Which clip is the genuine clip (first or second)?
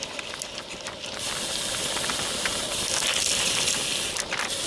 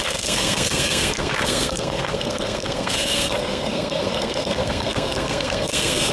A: first